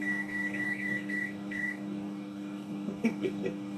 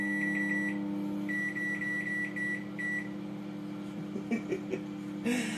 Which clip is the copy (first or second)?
first